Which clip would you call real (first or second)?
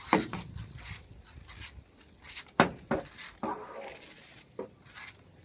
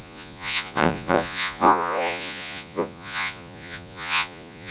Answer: first